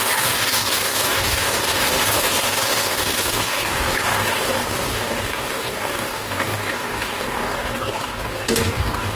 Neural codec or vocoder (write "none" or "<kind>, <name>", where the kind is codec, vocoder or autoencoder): codec, DAC